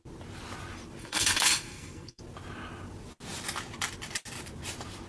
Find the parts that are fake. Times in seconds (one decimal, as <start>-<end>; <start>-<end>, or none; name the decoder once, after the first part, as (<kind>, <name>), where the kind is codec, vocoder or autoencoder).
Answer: 1.0-2.2 (codec, SNAC)